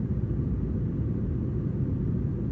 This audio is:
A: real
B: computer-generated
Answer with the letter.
A